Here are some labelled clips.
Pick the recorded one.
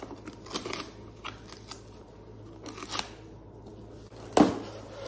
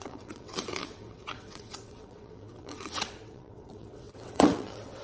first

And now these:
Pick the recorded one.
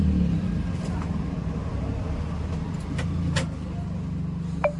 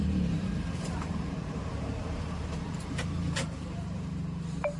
first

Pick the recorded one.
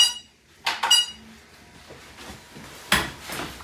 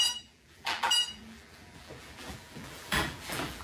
first